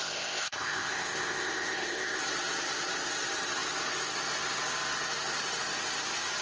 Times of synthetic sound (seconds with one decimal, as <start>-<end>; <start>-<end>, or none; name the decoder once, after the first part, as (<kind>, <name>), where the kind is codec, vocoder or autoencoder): 0.0-2.2 (codec, ZipCodec)